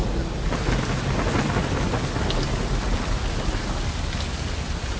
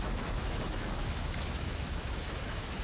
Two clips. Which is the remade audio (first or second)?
second